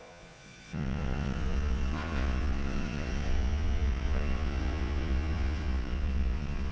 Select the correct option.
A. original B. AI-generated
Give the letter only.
B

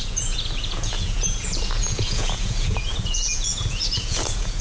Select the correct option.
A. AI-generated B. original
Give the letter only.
A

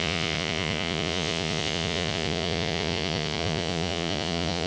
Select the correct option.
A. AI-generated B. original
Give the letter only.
A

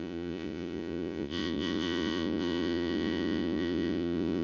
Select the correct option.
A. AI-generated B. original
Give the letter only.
A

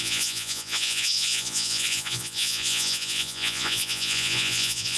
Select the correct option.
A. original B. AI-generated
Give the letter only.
B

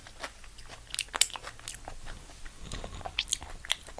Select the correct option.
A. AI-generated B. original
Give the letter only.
B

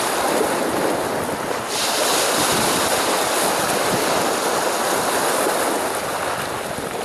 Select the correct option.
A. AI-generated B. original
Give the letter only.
B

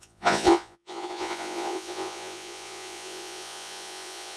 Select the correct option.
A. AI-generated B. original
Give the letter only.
A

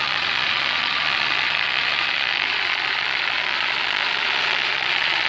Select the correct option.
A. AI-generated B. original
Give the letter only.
A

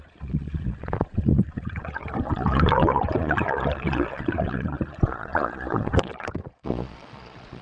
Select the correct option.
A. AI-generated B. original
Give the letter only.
A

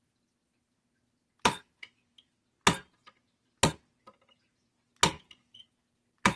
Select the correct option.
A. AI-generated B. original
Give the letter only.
B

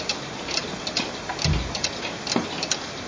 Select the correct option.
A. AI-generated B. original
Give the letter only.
B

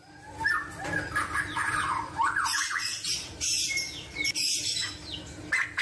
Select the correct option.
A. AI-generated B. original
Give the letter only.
B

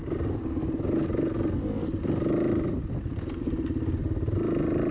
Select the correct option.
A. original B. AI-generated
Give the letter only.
A